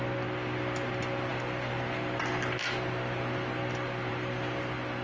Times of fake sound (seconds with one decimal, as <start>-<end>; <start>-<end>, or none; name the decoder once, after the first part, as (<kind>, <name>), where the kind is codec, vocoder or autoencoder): none